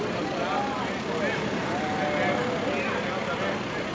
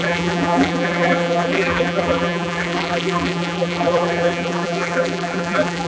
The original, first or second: first